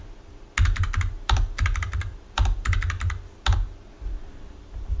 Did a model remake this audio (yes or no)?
no